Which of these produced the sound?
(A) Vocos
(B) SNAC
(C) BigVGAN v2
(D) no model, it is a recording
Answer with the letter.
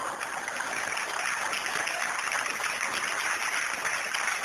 D